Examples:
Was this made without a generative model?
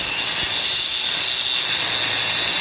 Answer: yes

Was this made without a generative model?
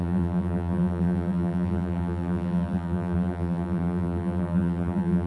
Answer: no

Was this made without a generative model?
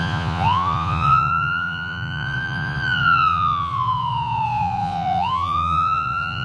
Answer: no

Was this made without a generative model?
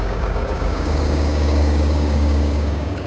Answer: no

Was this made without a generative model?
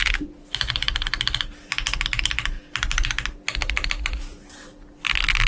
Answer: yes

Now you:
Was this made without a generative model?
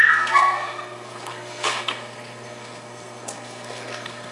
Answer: no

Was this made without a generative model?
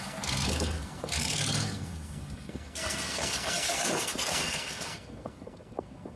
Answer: no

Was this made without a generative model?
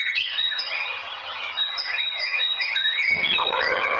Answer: no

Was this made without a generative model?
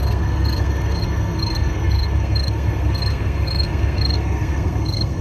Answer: no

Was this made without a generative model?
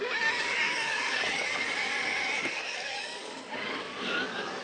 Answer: no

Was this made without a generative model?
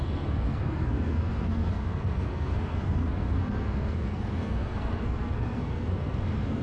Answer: no